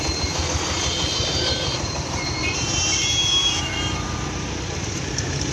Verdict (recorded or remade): remade